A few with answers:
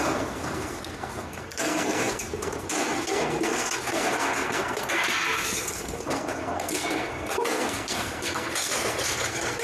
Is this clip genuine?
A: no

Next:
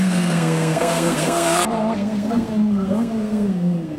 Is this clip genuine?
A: no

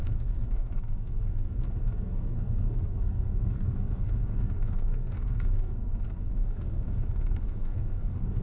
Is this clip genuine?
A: no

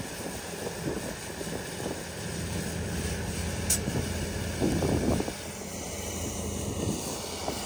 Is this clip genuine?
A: yes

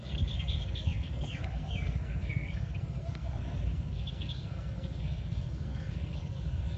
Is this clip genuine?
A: no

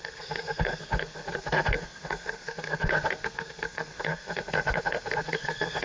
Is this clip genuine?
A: no